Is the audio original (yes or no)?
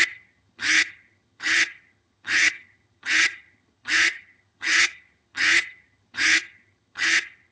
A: no